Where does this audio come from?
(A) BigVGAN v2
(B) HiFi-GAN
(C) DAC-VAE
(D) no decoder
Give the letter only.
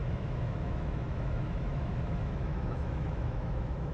C